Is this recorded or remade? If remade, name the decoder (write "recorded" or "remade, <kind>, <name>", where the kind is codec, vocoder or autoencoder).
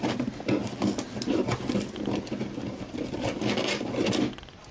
recorded